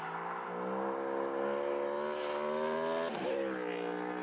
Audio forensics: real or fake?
real